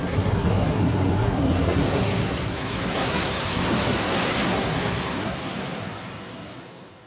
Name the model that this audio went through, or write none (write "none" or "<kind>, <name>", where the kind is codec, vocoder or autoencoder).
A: codec, SNAC